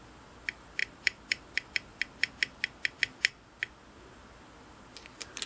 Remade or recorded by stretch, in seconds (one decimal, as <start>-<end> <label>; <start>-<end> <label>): 0.0-0.8 recorded; 0.8-2.3 remade; 2.3-5.5 recorded